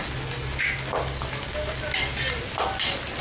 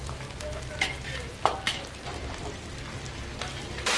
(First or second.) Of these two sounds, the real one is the first